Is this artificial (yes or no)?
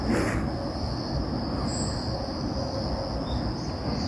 no